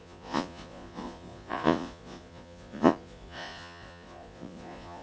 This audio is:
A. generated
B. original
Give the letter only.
A